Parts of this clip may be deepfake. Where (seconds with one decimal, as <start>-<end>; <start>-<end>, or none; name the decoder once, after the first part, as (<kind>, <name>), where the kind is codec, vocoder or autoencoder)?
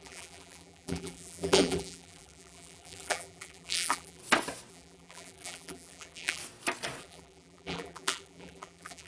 0.0-4.2 (vocoder, BigVGAN v2); 4.7-6.4; 7.0-9.1